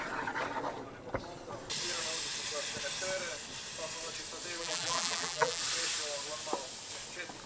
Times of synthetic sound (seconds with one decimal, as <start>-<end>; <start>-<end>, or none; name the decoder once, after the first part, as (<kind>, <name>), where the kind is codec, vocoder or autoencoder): 4.6-5.6 (vocoder, BigVGAN v2)